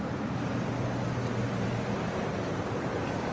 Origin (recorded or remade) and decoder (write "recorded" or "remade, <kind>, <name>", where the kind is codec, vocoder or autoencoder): remade, vocoder, BigVGAN v2